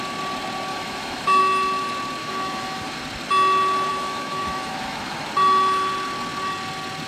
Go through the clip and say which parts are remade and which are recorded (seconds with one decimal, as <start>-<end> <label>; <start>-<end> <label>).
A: 0.0-0.7 recorded; 0.7-1.4 remade; 1.4-2.2 recorded; 2.2-3.0 remade; 3.0-3.9 recorded; 3.9-5.2 remade; 5.2-7.1 recorded